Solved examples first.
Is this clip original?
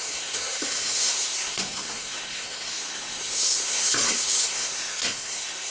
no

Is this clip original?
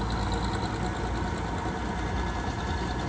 yes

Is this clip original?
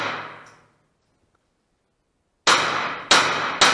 yes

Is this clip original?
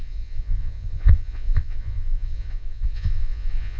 no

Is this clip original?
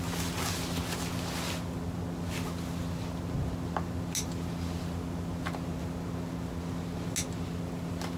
yes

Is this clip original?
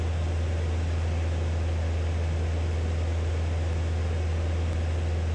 yes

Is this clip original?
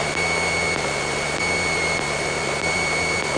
yes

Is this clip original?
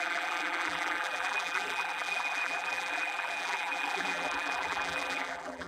no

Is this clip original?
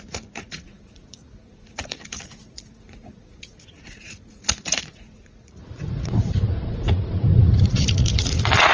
no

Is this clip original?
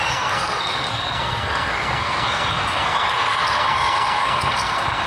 no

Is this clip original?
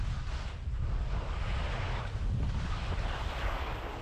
yes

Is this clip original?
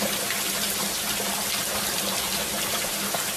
yes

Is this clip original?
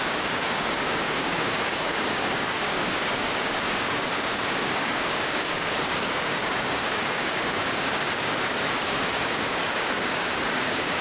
no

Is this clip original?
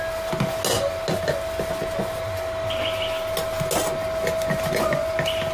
yes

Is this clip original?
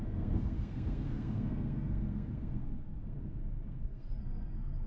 no